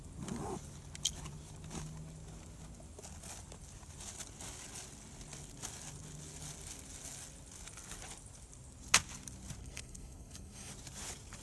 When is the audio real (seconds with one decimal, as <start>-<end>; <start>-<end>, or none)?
0.0-9.6; 10.7-11.4